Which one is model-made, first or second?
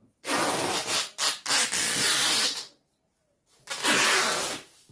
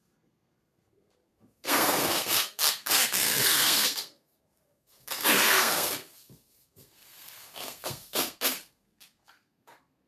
second